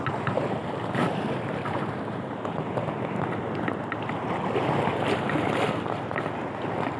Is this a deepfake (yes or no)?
no